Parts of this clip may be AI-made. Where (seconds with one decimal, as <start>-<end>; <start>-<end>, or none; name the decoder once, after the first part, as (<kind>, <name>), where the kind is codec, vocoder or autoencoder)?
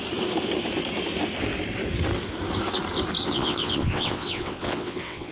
3.2-5.3 (vocoder, WaveNeXt)